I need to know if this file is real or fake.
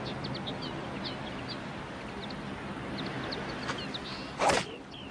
real